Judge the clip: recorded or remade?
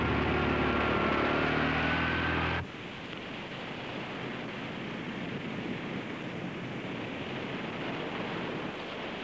recorded